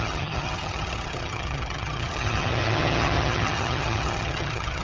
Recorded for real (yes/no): no